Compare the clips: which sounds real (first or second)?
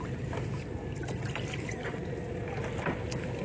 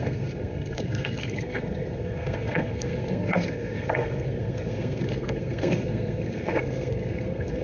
first